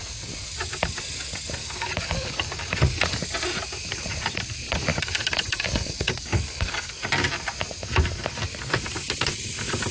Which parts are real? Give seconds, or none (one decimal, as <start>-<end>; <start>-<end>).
0.0-1.6; 2.8-4.9; 6.9-9.9